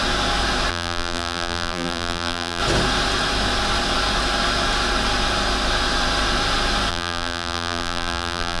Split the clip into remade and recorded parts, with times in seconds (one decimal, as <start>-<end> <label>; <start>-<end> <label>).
0.0-0.7 recorded; 0.7-2.6 remade; 2.6-6.9 recorded; 6.9-8.6 remade